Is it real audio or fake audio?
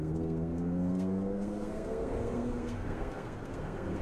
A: fake